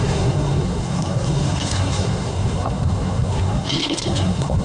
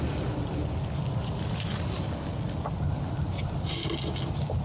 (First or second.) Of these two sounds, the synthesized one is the first